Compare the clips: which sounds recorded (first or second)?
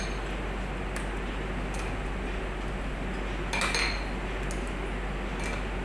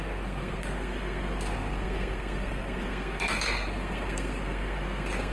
first